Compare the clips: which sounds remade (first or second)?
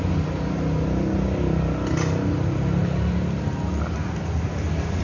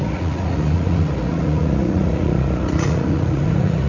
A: second